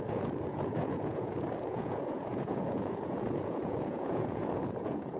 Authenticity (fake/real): fake